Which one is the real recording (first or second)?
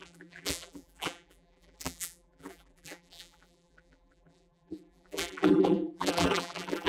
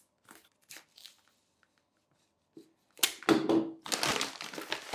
second